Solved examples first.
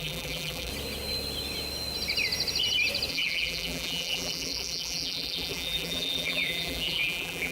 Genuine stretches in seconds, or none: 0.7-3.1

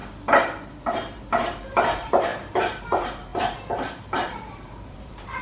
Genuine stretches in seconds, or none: 0.0-1.3

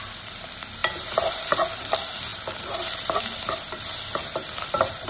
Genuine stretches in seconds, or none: none

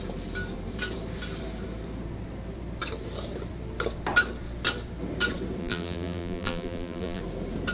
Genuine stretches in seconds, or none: 0.0-5.6; 7.2-7.7

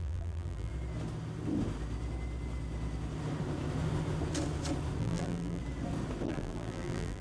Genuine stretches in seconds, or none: 0.7-5.0; 5.6-6.3

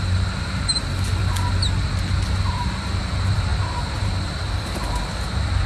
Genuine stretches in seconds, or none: 1.2-2.4

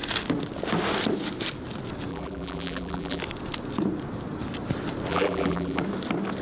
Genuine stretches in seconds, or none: 0.0-2.1; 3.2-5.1; 5.8-6.4

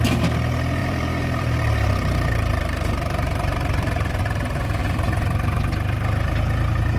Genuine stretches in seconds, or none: 0.0-0.8; 4.2-4.8; 5.6-7.0